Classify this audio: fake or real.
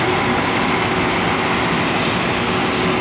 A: real